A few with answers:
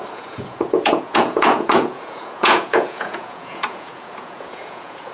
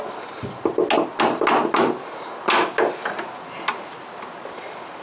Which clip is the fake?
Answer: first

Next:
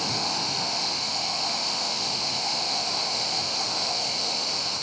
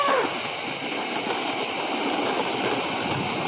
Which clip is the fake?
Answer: first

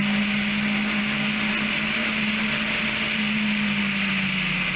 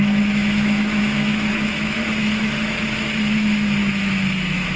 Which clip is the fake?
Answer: second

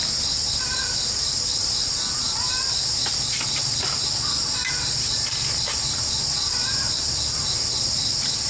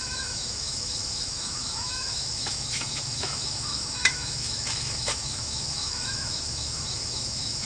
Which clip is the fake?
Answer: second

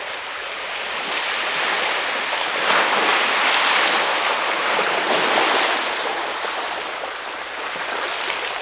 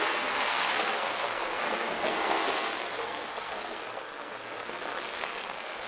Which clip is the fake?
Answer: second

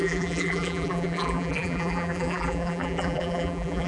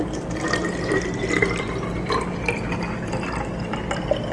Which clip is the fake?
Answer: first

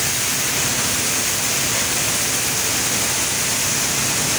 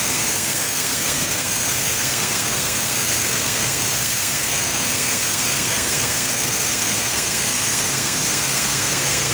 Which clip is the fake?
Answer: second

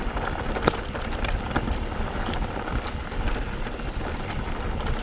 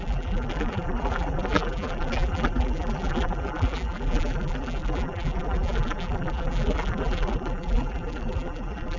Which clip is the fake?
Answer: second